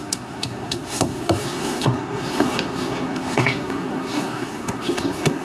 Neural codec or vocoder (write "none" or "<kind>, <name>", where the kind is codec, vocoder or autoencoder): codec, SNAC